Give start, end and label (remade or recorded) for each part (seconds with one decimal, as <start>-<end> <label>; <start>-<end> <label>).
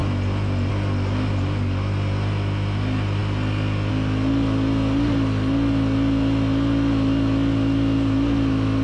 0.0-8.8 recorded